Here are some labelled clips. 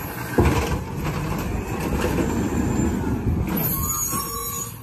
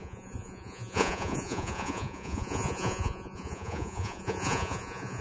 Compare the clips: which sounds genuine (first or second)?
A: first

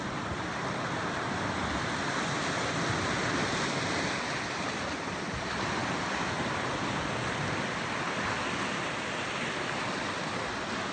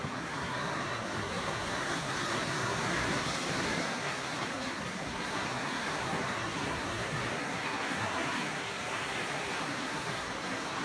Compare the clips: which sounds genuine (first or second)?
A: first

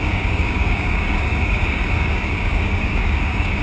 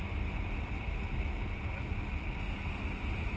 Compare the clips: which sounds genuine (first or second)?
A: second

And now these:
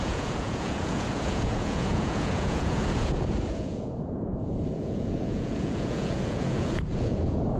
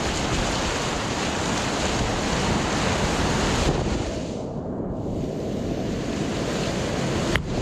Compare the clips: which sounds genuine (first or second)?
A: second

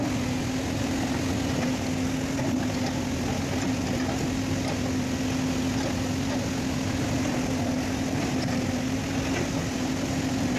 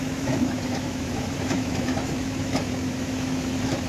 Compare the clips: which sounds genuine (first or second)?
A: first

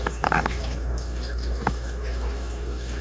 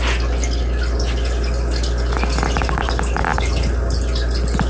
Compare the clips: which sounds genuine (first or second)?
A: second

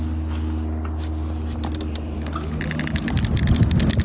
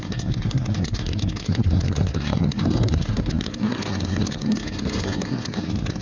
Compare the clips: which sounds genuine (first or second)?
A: first